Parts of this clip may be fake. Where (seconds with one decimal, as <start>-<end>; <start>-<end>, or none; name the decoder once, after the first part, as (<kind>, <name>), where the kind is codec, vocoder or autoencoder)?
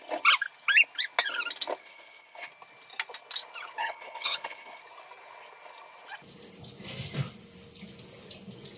1.8-2.5 (codec, HILCodec); 3.8-4.8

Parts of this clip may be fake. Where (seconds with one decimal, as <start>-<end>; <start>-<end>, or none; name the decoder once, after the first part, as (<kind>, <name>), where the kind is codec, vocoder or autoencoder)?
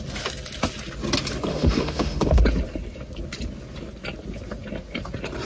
1.5-2.4 (autoencoder, DAC-VAE)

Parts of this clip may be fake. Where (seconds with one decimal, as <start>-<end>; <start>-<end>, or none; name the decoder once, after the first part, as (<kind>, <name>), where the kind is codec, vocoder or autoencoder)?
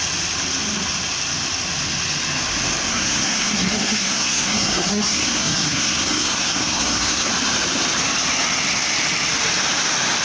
2.9-7.3 (codec, SNAC)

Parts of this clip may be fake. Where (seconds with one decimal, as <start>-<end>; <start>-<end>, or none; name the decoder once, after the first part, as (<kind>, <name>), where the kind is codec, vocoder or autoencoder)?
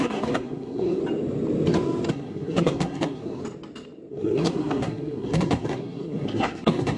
0.0-1.0 (codec, SNAC); 2.1-3.4; 4.1-7.0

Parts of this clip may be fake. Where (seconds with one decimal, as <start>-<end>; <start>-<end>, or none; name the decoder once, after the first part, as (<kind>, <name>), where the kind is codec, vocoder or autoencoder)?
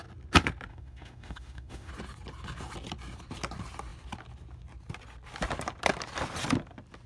0.7-1.9 (autoencoder, DAC-VAE)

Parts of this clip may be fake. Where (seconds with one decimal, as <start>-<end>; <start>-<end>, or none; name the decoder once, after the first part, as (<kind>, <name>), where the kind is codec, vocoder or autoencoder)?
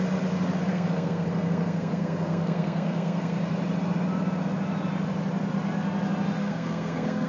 0.7-3.4 (codec, SNAC); 6.4-7.3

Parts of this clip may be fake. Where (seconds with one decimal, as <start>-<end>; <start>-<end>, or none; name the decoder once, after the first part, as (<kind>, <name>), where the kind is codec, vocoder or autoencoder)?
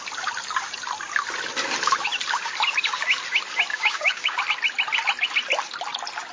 3.7-4.4 (codec, DAC)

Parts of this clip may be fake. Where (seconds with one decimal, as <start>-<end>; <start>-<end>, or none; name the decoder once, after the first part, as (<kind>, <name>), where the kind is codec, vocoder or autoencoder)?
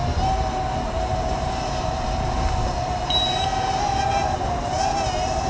0.0-5.5 (vocoder, BigVGAN v2)